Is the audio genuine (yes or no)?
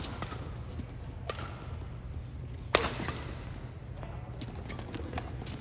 yes